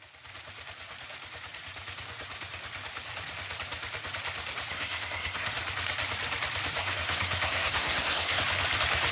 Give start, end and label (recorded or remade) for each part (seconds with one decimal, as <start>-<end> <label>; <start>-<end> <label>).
0.0-4.7 recorded; 4.7-5.5 remade; 5.5-6.8 recorded; 6.8-8.4 remade; 8.4-9.1 recorded